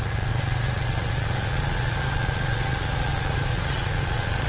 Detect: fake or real fake